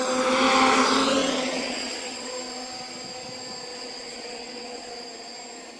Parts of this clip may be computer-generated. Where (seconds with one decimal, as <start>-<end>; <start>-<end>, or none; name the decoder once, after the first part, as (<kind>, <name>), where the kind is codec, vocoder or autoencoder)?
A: 1.2-2.3 (vocoder, WaveNeXt); 3.7-4.9

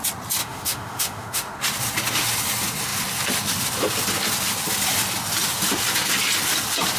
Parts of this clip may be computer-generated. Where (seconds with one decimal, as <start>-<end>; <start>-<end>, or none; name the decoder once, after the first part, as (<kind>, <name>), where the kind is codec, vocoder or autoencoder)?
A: 0.4-1.6 (autoencoder, DAC-VAE)

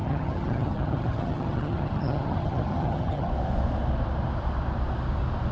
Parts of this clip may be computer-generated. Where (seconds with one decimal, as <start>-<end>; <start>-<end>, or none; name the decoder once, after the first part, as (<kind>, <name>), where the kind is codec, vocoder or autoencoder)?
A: 0.0-3.3 (vocoder, HiFi-GAN)

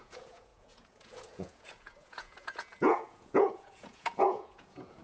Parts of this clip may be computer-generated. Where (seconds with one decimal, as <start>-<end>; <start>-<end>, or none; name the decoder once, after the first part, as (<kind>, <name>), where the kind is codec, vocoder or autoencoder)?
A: 0.0-5.0 (vocoder, Vocos)